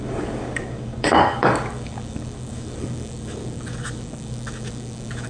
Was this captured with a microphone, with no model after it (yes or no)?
no